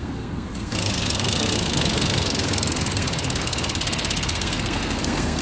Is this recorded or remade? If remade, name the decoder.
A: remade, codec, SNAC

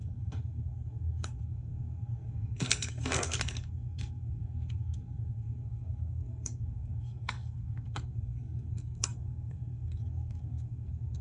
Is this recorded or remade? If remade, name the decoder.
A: remade, codec, SNAC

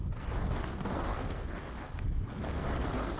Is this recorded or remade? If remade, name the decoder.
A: remade, codec, SNAC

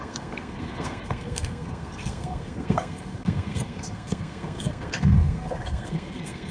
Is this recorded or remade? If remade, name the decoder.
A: remade, codec, SNAC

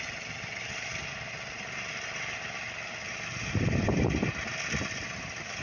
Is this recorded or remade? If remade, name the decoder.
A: recorded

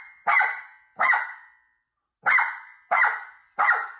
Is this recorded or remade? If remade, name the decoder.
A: recorded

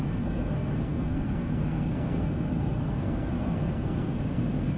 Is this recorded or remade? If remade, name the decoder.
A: remade, codec, SNAC